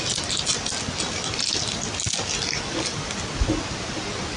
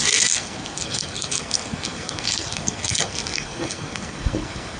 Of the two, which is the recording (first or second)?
first